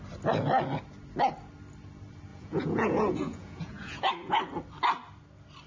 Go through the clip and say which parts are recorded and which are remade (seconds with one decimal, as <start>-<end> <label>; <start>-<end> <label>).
0.0-2.3 recorded; 2.3-4.1 remade; 4.1-5.7 recorded